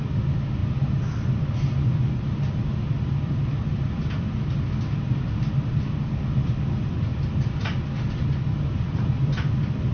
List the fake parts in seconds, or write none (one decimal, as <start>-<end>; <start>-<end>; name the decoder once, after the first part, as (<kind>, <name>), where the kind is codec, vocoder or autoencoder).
none